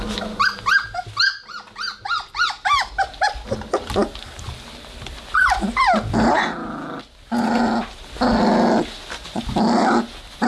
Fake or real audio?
real